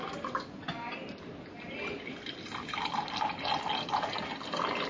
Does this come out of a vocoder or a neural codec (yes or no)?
no